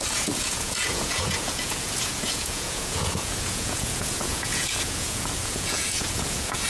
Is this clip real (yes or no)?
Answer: no